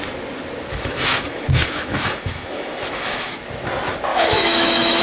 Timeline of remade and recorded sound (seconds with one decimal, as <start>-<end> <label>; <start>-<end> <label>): 0.0-0.7 recorded; 0.7-3.4 remade; 3.4-4.1 recorded; 4.1-5.0 remade